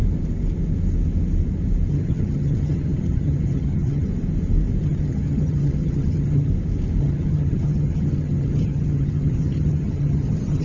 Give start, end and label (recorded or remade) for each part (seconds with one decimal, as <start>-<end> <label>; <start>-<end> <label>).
0.0-1.9 recorded; 1.9-4.1 remade; 4.1-4.8 recorded; 4.8-6.5 remade; 6.5-7.0 recorded; 7.0-10.6 remade